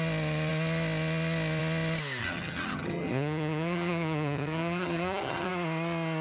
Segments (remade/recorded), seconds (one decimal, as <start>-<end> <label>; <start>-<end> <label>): 0.0-2.2 recorded; 2.2-5.5 remade; 5.5-6.2 recorded